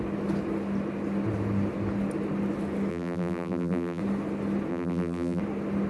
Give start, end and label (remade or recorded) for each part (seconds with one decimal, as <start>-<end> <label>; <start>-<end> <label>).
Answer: 0.0-2.9 recorded; 2.9-4.0 remade; 4.0-4.7 recorded; 4.7-5.4 remade; 5.4-5.9 recorded